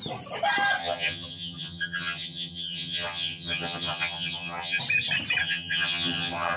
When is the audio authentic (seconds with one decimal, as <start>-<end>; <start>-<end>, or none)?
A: 0.0-0.8; 4.8-5.4

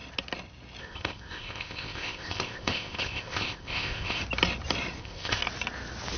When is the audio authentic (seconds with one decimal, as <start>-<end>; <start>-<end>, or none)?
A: 0.0-0.8; 4.2-5.0; 5.4-6.2

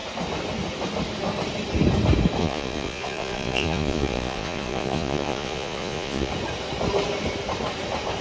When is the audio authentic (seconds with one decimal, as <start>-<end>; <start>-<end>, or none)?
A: 0.0-2.4; 6.3-8.2

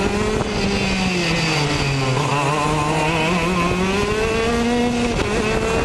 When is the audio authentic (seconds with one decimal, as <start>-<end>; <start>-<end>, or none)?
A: 0.0-5.8

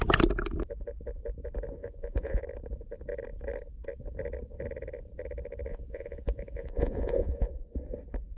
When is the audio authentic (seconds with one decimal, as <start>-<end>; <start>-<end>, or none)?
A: 0.0-1.8; 2.4-5.7; 7.8-8.4

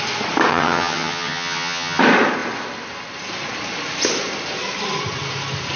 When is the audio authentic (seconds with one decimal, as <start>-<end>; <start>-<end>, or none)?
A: 0.0-0.5; 2.0-5.8

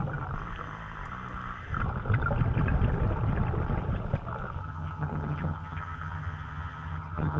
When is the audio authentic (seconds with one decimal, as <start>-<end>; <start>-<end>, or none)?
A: 0.0-4.6